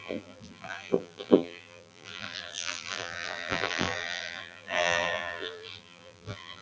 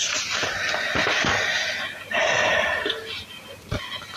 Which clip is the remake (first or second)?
first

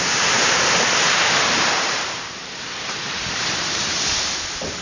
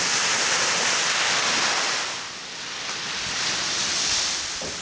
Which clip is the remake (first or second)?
first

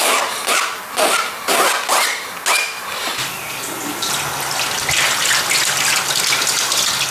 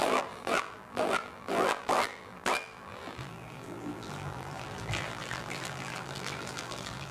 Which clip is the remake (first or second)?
second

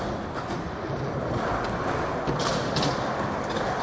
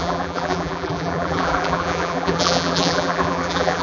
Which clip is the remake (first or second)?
second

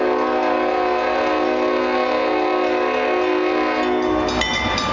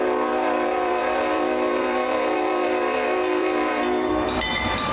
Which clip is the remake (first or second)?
second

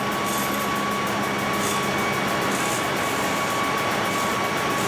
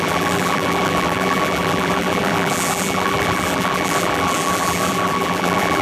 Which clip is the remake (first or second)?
second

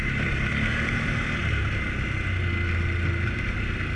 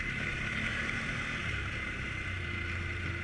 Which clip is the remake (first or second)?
second